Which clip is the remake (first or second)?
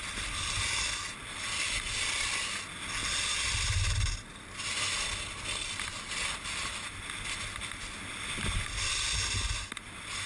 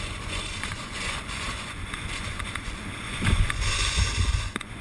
second